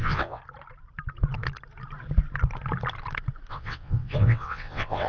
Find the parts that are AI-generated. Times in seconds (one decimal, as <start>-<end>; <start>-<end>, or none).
0.0-0.4; 3.5-5.1